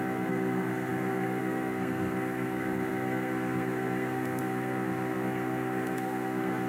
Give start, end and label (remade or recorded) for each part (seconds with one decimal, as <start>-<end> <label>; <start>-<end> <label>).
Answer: 0.0-6.7 remade